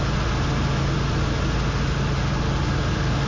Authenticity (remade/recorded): recorded